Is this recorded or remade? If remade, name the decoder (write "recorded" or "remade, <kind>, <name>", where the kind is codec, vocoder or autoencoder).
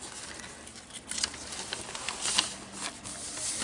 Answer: recorded